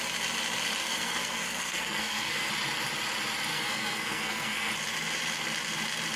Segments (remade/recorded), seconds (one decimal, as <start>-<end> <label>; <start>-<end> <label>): 0.0-0.8 recorded; 0.8-2.5 remade; 2.5-3.5 recorded; 3.5-4.7 remade; 4.7-6.2 recorded